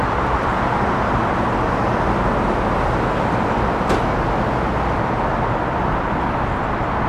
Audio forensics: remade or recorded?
recorded